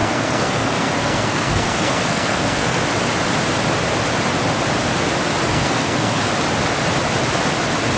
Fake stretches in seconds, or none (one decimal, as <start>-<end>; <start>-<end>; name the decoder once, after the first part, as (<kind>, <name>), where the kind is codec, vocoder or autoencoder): 0.0-2.8 (codec, SNAC); 5.5-6.2

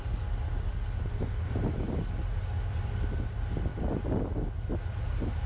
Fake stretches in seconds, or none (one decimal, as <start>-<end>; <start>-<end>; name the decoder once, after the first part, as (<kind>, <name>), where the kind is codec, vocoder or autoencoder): none

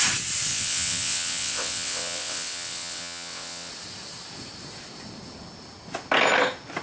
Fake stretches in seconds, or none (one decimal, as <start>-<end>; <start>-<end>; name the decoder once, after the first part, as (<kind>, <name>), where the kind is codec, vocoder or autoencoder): 0.5-3.7 (vocoder, WaveNeXt)

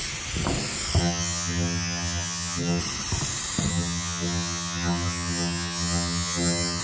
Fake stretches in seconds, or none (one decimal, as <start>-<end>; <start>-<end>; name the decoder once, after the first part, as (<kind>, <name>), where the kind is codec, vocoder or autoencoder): 1.0-2.8 (vocoder, HiFi-GAN); 3.7-6.8

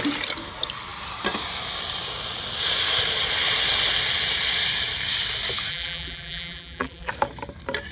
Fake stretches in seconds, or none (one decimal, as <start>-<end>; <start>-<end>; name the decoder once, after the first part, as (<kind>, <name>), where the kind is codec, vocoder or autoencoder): 5.7-7.1 (vocoder, BigVGAN v2)